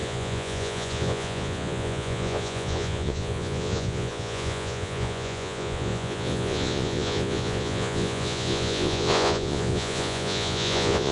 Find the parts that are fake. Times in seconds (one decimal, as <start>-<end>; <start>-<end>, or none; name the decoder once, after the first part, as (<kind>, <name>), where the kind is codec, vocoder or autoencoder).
0.0-11.1 (vocoder, Vocos)